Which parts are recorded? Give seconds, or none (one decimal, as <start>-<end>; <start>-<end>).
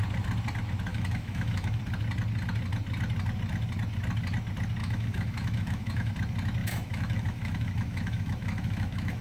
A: 0.0-0.9; 1.8-4.8; 6.1-6.6